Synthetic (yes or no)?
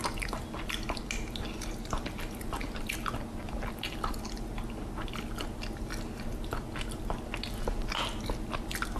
no